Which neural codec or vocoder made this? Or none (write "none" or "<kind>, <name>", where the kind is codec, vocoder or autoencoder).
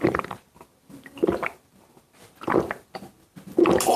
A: none